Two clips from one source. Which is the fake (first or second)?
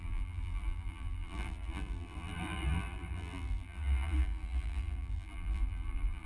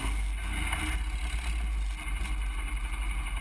first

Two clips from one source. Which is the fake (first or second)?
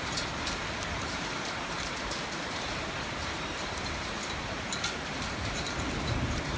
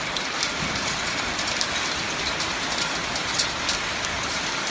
first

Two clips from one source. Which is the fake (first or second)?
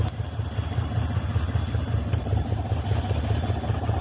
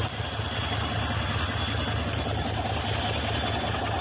first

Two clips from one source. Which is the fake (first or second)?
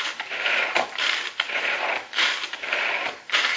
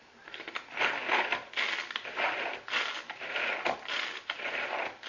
first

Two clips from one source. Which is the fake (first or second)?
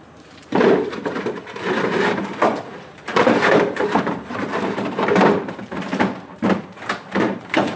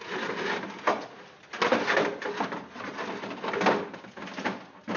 first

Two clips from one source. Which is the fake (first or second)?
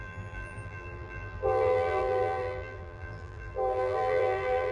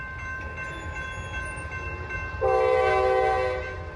first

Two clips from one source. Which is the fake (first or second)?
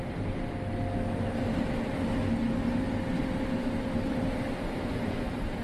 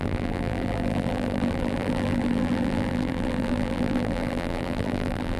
second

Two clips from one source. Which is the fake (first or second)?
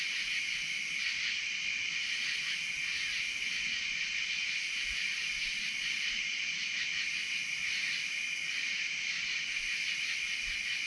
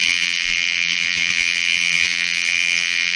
second